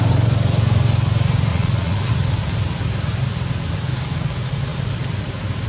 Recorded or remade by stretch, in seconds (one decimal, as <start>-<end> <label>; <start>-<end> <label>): 0.0-1.5 recorded; 1.5-2.1 remade; 2.1-5.7 recorded